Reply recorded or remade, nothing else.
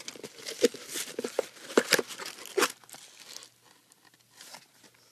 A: recorded